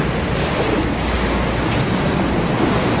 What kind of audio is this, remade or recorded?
recorded